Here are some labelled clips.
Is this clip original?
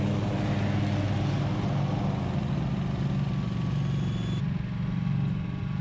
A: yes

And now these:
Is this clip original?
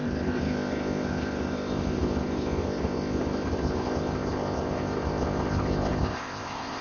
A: no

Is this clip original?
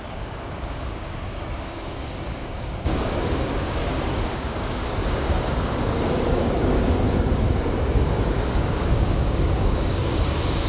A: no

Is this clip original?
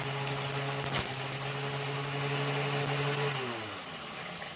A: yes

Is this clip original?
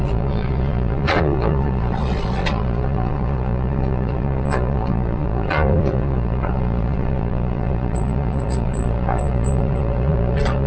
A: no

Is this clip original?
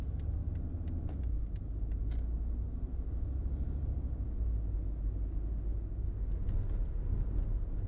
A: yes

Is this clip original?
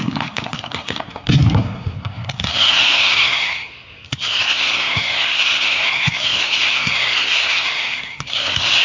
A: no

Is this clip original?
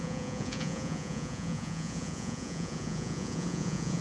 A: no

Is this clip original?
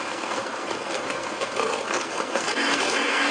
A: no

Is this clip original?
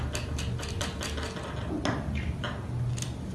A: yes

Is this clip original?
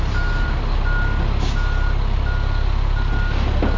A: yes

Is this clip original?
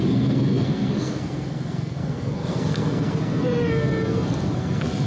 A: no